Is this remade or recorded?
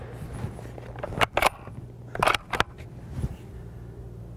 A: recorded